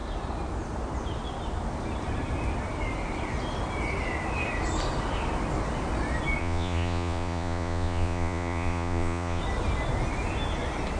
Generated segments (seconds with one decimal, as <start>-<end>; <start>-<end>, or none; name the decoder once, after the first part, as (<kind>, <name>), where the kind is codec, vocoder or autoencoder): 6.4-9.4 (vocoder, Vocos)